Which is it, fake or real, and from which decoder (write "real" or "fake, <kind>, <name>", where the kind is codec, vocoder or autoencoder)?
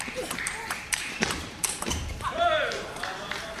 fake, vocoder, BigVGAN v2